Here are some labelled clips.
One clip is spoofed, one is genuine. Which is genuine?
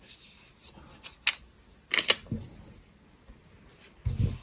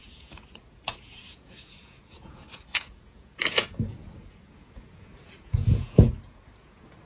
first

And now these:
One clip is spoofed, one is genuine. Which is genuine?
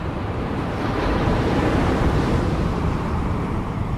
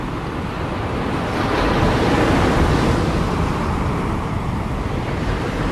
second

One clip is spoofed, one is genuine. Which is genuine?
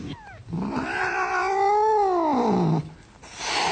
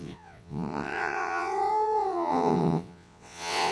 first